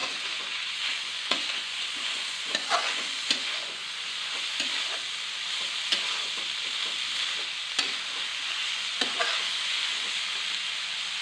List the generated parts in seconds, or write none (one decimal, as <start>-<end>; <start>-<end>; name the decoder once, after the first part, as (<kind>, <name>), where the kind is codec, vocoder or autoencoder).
0.0-4.6 (vocoder, Vocos); 8.3-10.1